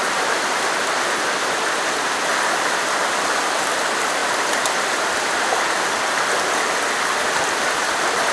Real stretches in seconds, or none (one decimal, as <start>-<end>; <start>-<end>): 0.0-8.3